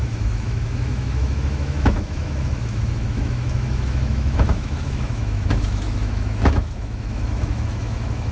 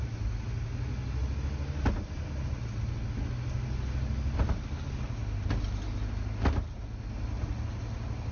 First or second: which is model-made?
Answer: first